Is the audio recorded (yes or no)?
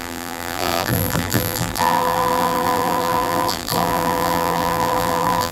no